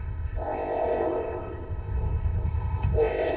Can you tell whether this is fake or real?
fake